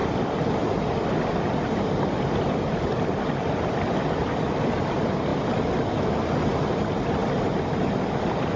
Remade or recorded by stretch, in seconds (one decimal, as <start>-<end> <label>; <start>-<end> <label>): 0.0-8.6 recorded